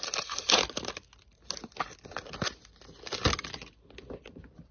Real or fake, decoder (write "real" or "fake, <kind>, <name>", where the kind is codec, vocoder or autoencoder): real